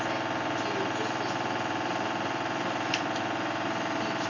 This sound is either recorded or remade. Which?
recorded